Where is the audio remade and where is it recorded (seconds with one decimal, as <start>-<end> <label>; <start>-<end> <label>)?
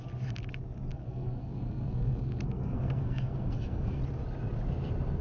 0.0-0.9 recorded; 0.9-4.0 remade; 4.0-5.2 recorded